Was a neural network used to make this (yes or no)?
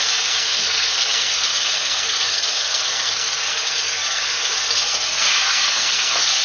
yes